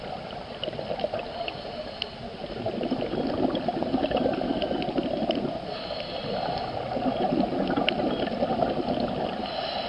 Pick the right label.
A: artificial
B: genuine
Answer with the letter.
B